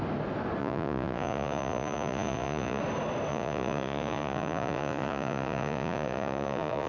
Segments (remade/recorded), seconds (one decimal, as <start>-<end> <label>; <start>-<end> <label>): 0.0-0.6 recorded; 0.6-2.8 remade; 2.8-3.3 recorded; 3.3-6.9 remade